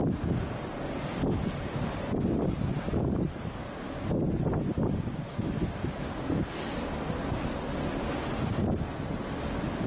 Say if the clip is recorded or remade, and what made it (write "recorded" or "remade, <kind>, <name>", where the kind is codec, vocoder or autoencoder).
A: recorded